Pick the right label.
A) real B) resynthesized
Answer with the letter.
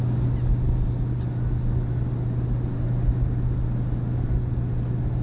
A